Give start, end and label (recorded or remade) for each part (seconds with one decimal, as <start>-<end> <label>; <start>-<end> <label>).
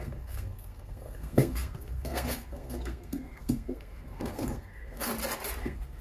0.0-5.1 remade; 5.1-5.6 recorded; 5.6-6.0 remade